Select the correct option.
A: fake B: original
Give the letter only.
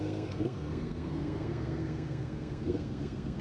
A